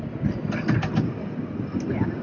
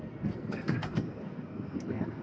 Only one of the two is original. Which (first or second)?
first